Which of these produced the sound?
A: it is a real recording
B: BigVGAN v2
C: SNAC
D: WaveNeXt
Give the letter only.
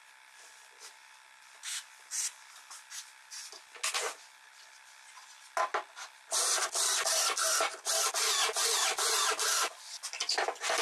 A